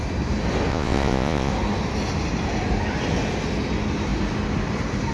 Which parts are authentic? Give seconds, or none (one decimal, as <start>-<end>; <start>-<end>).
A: 0.0-0.7; 1.5-5.1